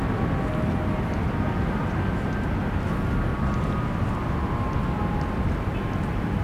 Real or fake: real